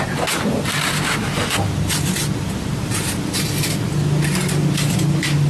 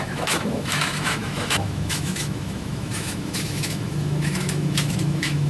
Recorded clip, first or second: first